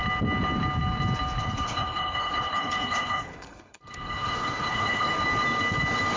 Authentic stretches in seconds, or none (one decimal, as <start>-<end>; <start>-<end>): 0.0-1.4; 5.1-6.2